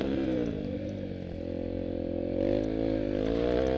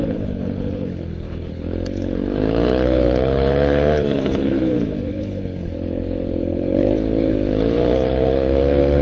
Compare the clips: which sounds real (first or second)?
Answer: first